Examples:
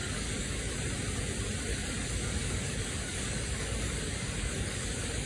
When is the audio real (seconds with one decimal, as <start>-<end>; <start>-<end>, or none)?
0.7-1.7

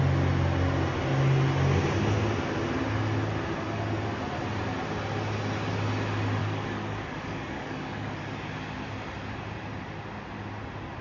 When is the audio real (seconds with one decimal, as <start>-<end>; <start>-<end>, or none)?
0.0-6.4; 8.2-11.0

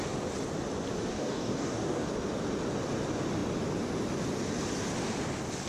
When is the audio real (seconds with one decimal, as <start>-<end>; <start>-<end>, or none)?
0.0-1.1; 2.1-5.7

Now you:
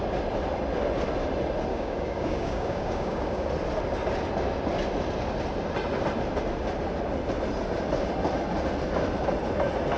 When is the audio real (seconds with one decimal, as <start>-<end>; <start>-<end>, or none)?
0.0-1.7; 3.5-10.0